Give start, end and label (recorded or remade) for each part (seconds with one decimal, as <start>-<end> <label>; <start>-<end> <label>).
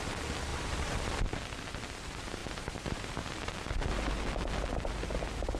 0.0-0.5 recorded; 0.5-1.4 remade; 1.4-2.4 recorded; 2.4-3.5 remade; 3.5-5.6 recorded